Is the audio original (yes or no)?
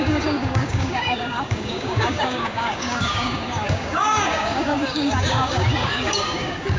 no